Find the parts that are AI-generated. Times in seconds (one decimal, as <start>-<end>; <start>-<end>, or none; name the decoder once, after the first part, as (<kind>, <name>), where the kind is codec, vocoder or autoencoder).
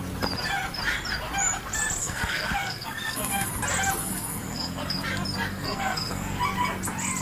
2.0-3.5 (codec, SNAC); 4.0-5.0; 5.5-6.4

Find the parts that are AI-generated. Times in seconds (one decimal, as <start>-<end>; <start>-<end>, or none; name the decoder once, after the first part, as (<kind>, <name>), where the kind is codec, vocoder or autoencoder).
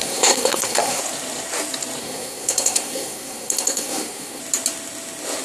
0.0-1.0 (codec, SNAC); 2.0-4.4